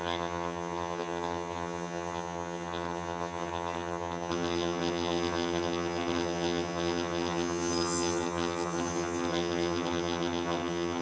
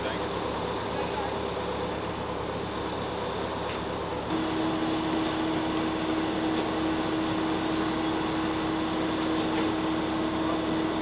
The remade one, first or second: first